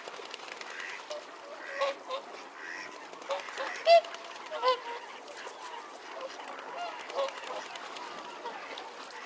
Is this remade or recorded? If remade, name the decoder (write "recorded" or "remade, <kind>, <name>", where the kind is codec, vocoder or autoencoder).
recorded